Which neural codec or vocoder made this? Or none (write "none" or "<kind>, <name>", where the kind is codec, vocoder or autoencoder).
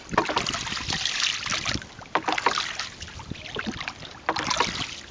none